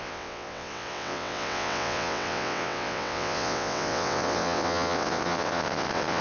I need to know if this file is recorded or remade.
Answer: remade